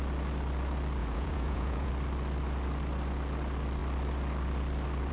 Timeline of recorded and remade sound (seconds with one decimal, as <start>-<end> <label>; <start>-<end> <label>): 0.0-1.0 recorded; 1.0-1.9 remade; 1.9-5.1 recorded